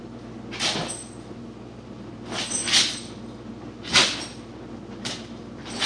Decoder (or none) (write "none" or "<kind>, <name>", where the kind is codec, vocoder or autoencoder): none